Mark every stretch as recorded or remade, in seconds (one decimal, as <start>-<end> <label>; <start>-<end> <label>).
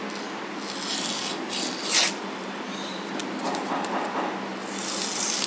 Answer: 0.0-5.5 recorded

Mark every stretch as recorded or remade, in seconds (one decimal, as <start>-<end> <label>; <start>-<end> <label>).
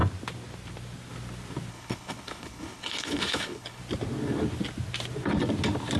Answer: 0.0-1.7 recorded; 1.7-3.8 remade; 3.8-6.0 recorded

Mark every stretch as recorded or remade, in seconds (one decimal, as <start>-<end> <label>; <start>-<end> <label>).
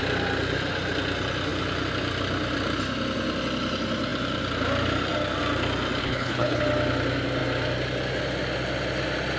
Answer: 0.0-6.0 recorded; 6.0-6.6 remade; 6.6-9.4 recorded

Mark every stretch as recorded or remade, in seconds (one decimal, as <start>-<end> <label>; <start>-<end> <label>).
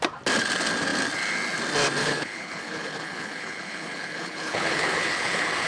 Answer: 0.0-2.0 recorded; 2.0-5.7 remade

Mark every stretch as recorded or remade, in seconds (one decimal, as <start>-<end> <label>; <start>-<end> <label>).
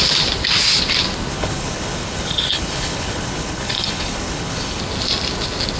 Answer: 0.0-1.3 recorded; 1.3-4.8 remade; 4.8-5.8 recorded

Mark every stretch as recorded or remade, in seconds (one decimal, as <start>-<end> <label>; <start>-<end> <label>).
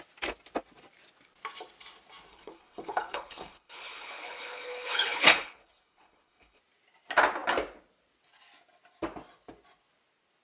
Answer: 0.0-2.3 recorded; 2.3-6.6 remade; 6.6-10.4 recorded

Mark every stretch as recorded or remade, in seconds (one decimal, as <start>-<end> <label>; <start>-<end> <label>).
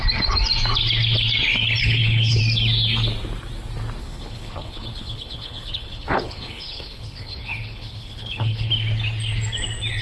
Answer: 0.0-1.8 recorded; 1.8-2.4 remade; 2.4-4.0 recorded; 4.0-8.7 remade; 8.7-10.0 recorded